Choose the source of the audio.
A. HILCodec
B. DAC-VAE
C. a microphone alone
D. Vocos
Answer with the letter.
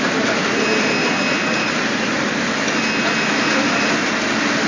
C